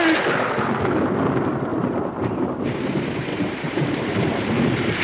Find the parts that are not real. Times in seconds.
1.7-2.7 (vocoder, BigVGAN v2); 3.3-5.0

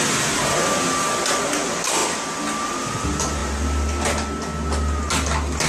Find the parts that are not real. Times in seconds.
none

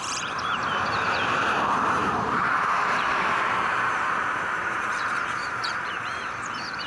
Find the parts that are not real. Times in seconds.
0.0-6.9 (vocoder, BigVGAN v2)

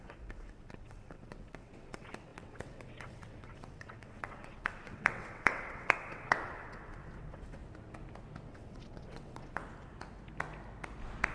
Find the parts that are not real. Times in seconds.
0.0-7.6 (vocoder, WaveNeXt); 8.5-9.6

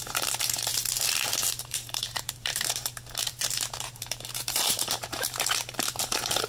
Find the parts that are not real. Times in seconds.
0.0-0.7 (vocoder, BigVGAN v2); 1.6-6.5

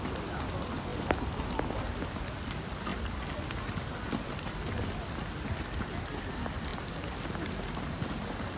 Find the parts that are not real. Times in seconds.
none